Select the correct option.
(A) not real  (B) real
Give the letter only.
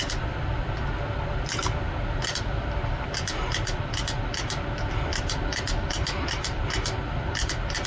A